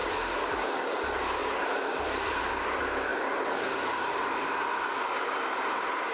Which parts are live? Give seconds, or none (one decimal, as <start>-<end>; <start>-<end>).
1.0-1.4; 2.4-3.1; 5.0-6.1

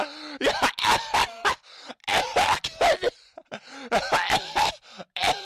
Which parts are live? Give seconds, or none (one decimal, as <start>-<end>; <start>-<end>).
0.0-5.4